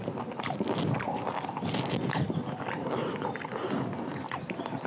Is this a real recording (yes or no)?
yes